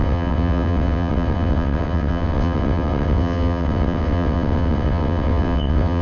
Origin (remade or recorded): remade